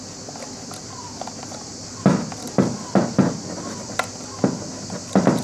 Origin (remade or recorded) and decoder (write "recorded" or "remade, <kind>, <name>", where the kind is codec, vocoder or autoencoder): recorded